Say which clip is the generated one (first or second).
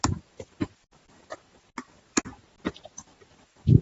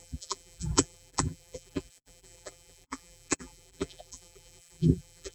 second